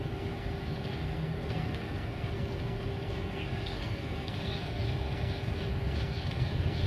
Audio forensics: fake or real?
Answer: fake